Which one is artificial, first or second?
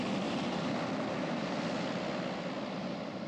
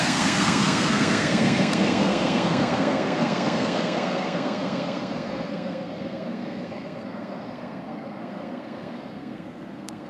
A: second